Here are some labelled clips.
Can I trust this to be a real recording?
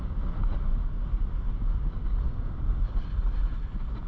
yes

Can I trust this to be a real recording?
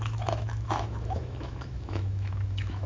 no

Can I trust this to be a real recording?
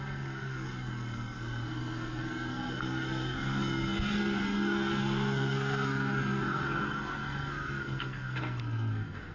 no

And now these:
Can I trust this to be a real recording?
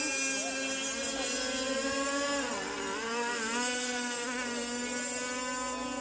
yes